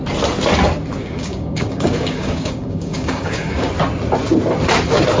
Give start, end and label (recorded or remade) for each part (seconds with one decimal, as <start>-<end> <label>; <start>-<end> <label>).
0.0-1.0 recorded; 1.0-3.7 remade; 3.7-5.2 recorded